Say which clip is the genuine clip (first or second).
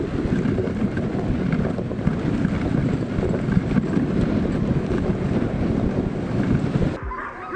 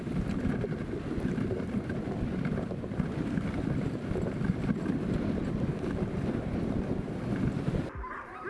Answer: first